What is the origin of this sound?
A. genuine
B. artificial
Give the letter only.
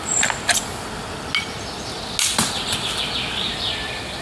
A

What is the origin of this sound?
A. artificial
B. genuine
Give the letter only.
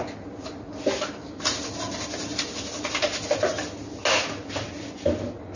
B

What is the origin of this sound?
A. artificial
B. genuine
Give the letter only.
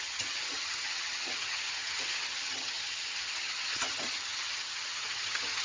A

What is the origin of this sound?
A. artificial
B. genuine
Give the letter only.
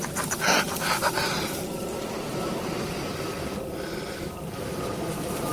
B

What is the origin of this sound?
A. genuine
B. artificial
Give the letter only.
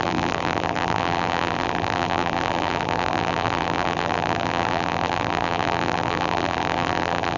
B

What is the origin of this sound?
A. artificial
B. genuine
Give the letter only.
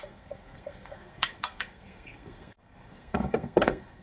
A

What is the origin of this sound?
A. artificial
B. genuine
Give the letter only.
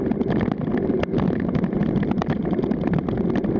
B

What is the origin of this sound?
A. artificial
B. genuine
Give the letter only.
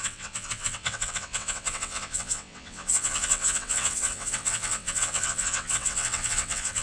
A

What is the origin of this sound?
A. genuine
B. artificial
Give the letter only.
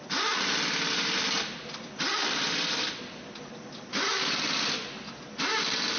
A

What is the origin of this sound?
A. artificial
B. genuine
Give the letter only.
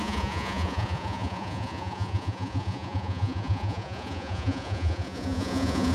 A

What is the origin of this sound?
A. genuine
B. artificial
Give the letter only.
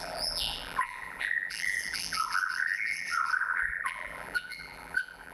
B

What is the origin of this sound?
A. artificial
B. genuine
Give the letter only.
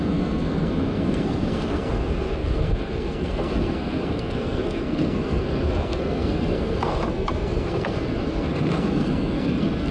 A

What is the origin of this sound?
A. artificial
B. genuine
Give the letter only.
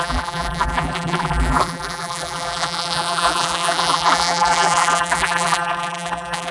A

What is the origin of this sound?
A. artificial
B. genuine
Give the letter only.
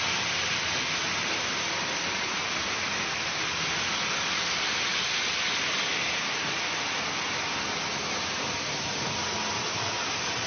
B